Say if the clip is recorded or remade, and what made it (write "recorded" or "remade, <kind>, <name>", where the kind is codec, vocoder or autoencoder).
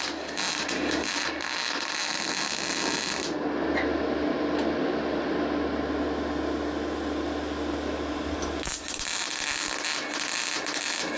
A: recorded